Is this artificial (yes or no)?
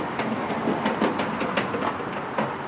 no